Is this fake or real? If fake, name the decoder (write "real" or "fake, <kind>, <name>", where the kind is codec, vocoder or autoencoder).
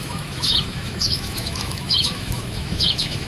fake, autoencoder, DAC-VAE